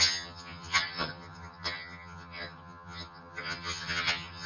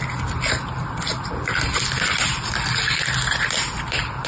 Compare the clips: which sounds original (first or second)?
second